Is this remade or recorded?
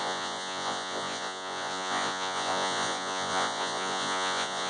remade